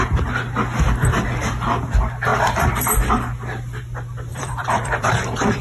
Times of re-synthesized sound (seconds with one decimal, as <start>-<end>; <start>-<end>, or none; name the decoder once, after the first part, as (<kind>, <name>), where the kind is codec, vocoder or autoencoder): 2.3-3.1 (vocoder, BigVGAN v2); 4.3-5.6